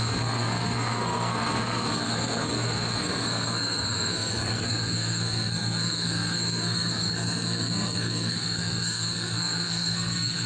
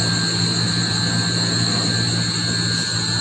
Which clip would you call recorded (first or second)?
second